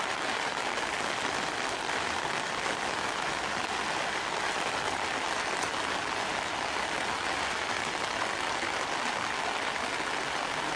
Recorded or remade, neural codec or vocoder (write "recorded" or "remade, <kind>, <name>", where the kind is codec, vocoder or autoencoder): recorded